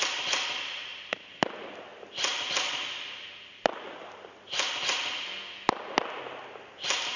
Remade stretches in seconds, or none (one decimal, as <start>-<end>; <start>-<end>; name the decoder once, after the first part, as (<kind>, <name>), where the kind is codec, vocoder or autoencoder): none